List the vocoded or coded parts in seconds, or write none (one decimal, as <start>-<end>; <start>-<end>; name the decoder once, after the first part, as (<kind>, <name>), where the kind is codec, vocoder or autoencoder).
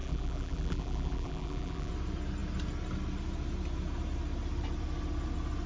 0.0-1.9 (vocoder, BigVGAN v2)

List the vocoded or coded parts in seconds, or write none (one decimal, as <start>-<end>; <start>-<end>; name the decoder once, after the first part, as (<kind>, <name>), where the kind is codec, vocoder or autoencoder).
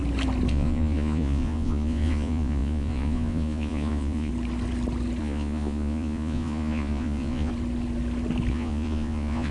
0.5-4.3 (vocoder, Vocos); 5.2-7.5; 8.5-9.5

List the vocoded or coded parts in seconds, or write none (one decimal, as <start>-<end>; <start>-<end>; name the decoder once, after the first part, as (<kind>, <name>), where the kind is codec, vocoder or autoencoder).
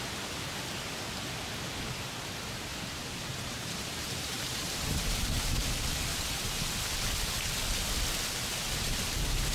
2.7-5.6 (vocoder, BigVGAN v2); 6.1-6.7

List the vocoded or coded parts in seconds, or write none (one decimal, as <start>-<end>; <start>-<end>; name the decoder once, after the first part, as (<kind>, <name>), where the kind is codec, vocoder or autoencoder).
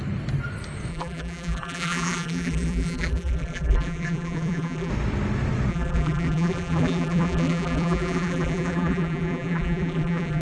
0.9-4.9 (vocoder, BigVGAN v2); 5.7-10.4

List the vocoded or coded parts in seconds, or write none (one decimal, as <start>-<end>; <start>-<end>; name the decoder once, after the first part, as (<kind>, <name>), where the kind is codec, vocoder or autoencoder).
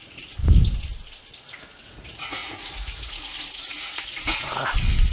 0.0-0.4 (vocoder, Vocos); 1.8-4.4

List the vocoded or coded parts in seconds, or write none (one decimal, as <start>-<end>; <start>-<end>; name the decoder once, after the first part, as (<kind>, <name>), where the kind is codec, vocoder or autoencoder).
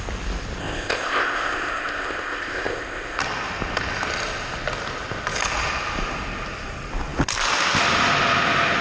0.6-3.2 (codec, ZipCodec)